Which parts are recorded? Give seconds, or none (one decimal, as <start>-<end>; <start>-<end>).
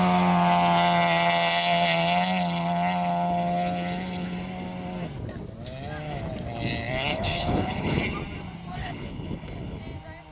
0.0-7.1; 8.0-8.8; 9.8-10.3